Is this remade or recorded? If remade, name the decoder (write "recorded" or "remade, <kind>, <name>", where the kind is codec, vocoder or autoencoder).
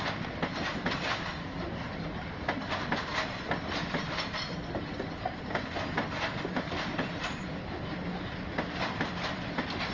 recorded